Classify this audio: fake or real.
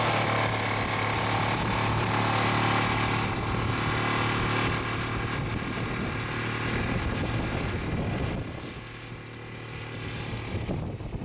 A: real